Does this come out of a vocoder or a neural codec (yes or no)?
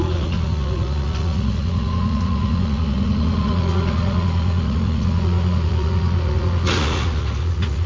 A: yes